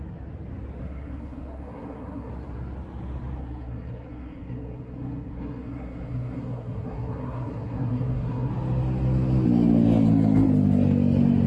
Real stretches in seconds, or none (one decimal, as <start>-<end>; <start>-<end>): 0.0-0.8; 2.3-3.4; 8.5-11.5